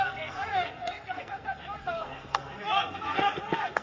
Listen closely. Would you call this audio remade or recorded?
remade